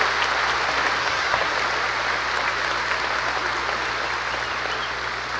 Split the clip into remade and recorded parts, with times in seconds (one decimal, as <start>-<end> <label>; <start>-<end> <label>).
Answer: 0.0-1.0 recorded; 1.0-1.5 remade; 1.5-5.4 recorded